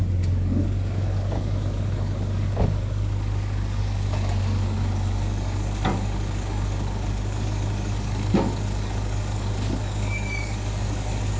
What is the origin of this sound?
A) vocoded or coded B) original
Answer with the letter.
A